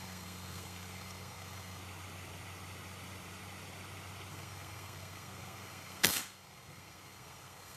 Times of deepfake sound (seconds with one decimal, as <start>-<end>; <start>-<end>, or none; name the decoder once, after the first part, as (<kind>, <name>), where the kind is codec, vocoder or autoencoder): 0.0-1.8 (codec, SNAC); 4.3-7.8